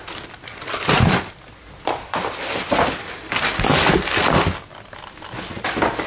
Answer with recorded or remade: recorded